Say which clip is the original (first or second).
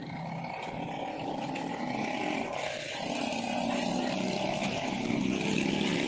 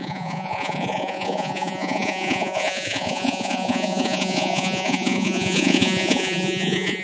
first